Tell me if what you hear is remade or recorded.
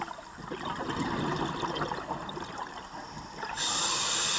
recorded